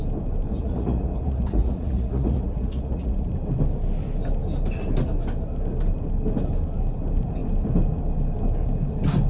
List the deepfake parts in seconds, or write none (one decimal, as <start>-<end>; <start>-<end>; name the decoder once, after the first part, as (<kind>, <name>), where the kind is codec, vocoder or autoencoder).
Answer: 0.5-3.3 (vocoder, Vocos)